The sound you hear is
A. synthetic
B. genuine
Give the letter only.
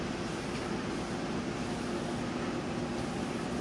B